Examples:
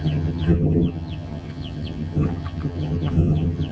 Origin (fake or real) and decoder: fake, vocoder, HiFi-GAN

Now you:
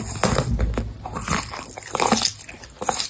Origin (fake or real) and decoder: real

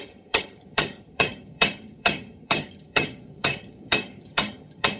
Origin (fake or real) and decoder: fake, vocoder, HiFi-GAN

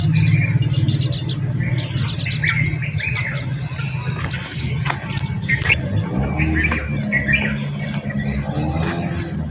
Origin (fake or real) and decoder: real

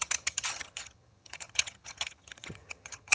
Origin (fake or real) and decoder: fake, vocoder, HiFi-GAN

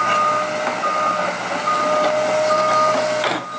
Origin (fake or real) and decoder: real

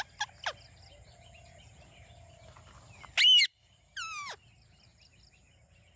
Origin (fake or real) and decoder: real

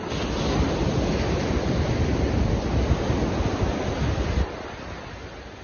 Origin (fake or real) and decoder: real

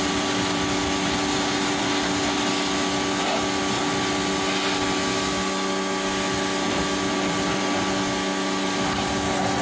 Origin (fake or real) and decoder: real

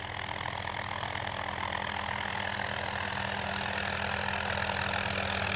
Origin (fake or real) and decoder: real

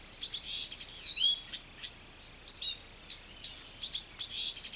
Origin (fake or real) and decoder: real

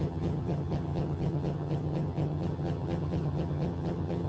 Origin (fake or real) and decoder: fake, vocoder, HiFi-GAN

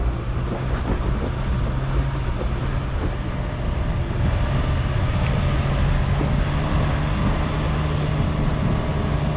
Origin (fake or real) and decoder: real